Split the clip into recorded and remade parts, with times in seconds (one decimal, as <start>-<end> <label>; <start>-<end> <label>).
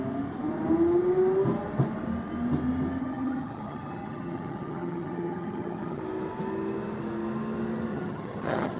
0.0-3.0 recorded; 3.0-6.0 remade; 6.0-7.9 recorded; 7.9-8.8 remade